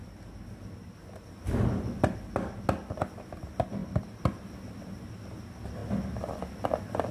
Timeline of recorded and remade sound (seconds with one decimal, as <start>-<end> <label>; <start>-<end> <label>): 0.0-7.1 recorded